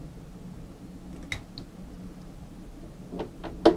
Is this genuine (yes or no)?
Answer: yes